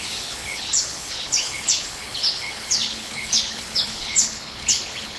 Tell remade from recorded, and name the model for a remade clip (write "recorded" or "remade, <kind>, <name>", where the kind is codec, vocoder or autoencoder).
remade, codec, HILCodec